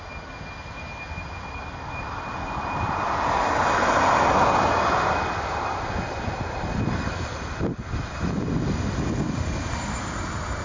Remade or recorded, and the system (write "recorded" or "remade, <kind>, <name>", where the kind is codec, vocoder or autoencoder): recorded